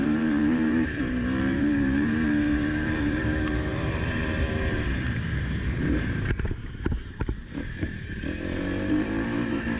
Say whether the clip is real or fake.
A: fake